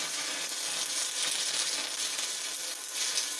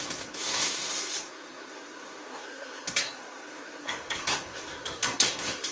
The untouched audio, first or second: first